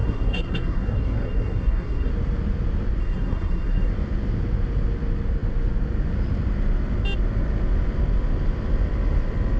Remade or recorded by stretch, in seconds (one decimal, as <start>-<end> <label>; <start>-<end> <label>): 0.0-2.1 remade; 2.1-3.0 recorded; 3.0-3.9 remade; 3.9-9.6 recorded